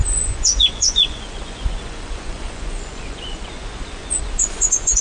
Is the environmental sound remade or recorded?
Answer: remade